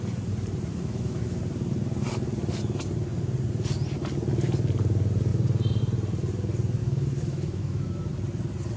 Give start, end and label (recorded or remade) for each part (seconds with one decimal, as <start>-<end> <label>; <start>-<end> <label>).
0.0-0.7 recorded; 0.7-1.4 remade; 1.4-6.8 recorded; 6.8-8.1 remade; 8.1-8.8 recorded